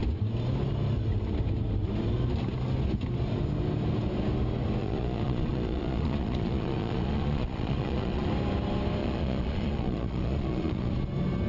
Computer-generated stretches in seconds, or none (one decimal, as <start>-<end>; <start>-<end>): 4.8-8.3; 9.0-10.9